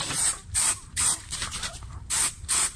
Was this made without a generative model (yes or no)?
no